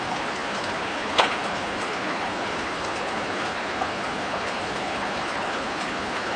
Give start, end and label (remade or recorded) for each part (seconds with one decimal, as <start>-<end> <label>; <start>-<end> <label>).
0.0-6.4 remade